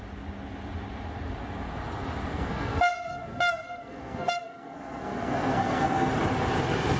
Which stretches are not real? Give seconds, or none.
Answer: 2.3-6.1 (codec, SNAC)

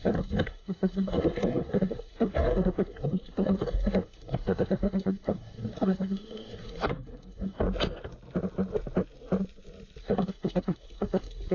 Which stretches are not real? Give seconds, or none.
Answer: 0.0-7.6 (codec, SNAC); 10.0-11.5

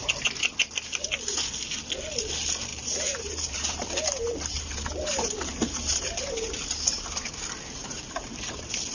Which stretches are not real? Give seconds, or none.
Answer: 2.7-7.3 (vocoder, BigVGAN v2); 7.8-8.9